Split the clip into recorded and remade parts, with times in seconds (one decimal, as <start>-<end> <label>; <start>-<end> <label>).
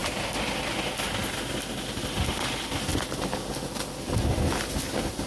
0.0-5.3 recorded